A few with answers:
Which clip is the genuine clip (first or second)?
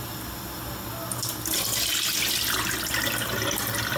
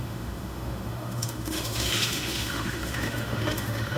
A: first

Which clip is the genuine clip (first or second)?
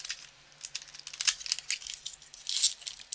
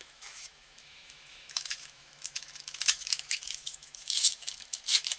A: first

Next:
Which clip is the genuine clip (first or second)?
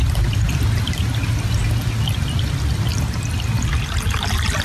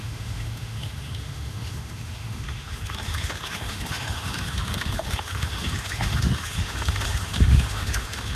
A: first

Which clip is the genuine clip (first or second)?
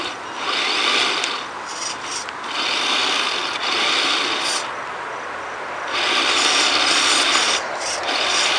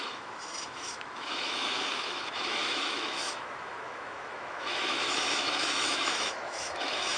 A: first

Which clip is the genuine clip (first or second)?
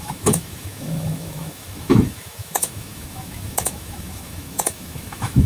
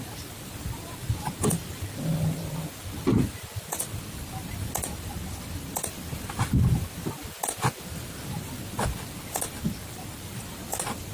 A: second